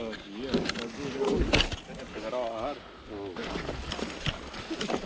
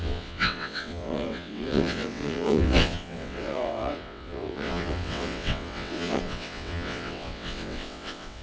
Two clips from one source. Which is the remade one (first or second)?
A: second